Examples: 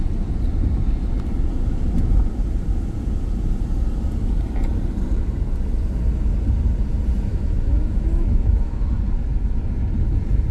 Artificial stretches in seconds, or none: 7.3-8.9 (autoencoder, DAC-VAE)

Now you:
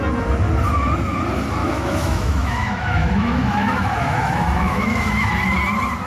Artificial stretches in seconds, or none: 1.6-5.3 (autoencoder, DAC-VAE)